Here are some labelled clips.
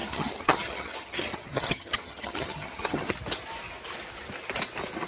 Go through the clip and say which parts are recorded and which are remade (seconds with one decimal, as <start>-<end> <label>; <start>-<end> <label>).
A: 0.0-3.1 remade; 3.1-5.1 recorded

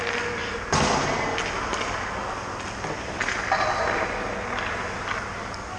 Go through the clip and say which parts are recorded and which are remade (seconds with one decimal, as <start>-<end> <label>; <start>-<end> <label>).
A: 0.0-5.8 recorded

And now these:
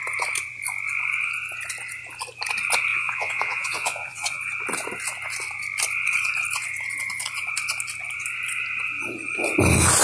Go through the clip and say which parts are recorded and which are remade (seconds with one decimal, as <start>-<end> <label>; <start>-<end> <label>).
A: 0.0-2.9 recorded; 2.9-4.4 remade; 4.4-10.0 recorded

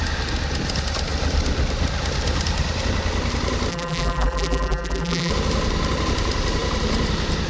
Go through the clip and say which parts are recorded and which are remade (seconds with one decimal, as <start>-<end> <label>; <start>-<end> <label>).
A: 0.0-3.7 recorded; 3.7-5.3 remade; 5.3-7.5 recorded